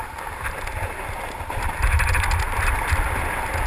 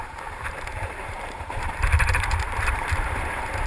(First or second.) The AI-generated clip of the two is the second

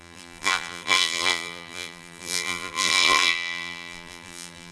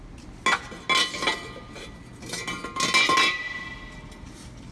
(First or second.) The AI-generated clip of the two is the first